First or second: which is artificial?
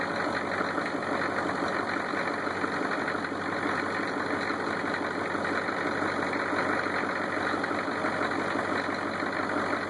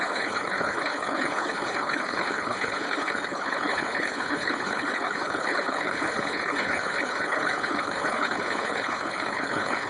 second